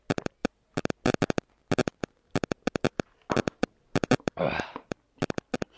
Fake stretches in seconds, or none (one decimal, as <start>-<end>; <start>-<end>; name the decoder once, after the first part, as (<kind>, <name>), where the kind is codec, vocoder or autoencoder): none